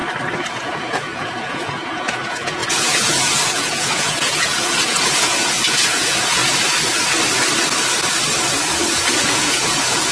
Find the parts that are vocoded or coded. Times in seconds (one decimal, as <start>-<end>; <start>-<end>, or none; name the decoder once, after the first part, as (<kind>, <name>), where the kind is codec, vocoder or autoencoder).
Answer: 0.5-6.4 (vocoder, Vocos); 8.8-10.1